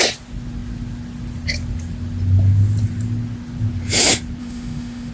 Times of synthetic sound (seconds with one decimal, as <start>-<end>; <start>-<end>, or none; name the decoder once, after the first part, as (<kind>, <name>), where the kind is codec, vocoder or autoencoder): 4.4-5.1 (autoencoder, DAC-VAE)